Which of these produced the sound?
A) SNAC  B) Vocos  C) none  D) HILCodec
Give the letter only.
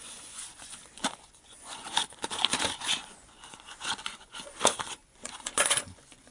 B